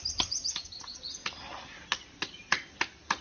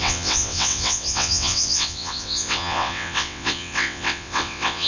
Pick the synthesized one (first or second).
second